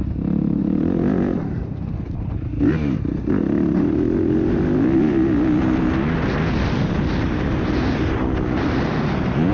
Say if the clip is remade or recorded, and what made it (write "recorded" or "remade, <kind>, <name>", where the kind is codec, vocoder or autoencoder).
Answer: recorded